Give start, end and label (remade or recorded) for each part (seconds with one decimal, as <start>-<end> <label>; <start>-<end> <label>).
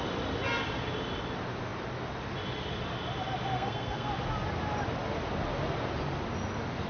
0.0-3.5 recorded; 3.5-4.1 remade; 4.1-6.9 recorded